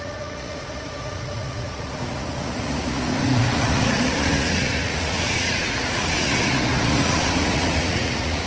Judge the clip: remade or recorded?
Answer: remade